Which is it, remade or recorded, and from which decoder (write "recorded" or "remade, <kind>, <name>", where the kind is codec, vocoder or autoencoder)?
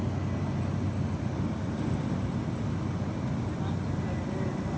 recorded